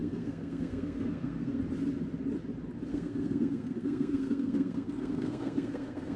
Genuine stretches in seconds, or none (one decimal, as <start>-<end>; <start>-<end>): 1.6-2.9